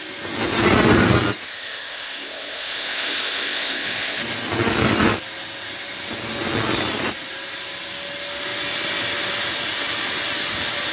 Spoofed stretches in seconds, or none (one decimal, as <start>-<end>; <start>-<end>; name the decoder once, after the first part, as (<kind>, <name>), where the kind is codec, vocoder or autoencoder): 1.4-4.2 (codec, ZipCodec)